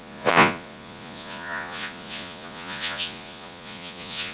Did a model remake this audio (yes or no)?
yes